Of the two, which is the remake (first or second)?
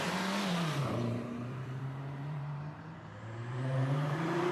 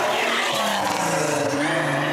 first